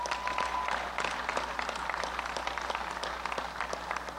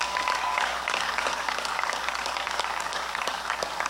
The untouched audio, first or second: first